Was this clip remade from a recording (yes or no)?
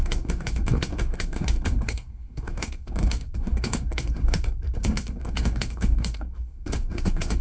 yes